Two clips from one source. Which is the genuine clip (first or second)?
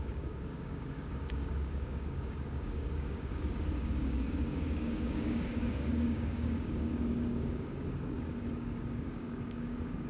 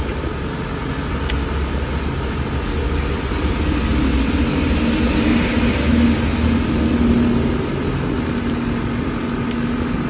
second